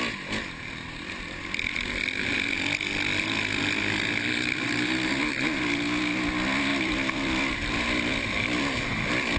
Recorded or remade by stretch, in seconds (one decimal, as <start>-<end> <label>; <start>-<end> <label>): 0.0-6.7 recorded; 6.7-8.6 remade; 8.6-9.4 recorded